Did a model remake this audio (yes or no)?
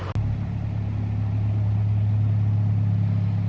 no